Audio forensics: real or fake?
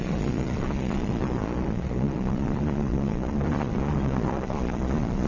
fake